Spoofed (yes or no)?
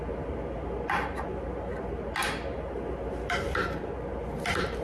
no